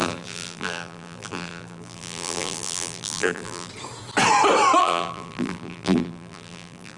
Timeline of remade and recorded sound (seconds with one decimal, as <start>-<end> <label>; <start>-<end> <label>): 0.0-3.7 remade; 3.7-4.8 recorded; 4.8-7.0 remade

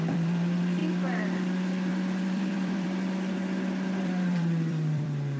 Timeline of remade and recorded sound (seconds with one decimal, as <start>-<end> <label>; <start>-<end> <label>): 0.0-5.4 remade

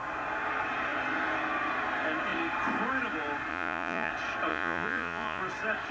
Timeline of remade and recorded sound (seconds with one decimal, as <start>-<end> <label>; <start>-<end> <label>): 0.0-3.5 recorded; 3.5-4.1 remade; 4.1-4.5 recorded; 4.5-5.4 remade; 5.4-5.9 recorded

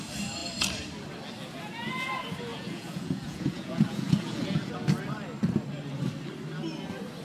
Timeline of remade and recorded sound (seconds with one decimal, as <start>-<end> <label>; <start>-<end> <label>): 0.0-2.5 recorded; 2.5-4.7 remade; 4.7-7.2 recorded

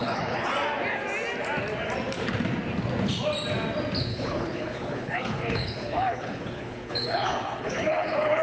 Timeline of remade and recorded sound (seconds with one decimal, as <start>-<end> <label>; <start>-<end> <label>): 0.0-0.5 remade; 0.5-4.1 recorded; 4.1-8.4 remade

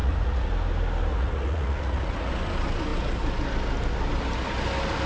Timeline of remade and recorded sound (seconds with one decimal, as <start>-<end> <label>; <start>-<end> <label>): 0.0-0.5 remade; 0.5-1.1 recorded; 1.1-2.3 remade; 2.3-5.1 recorded